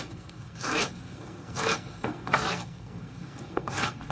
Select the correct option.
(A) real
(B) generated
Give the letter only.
B